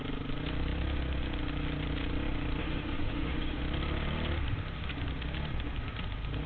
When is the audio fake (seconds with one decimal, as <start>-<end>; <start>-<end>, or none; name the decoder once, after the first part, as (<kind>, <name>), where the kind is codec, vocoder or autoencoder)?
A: 2.6-3.6 (autoencoder, DAC-VAE)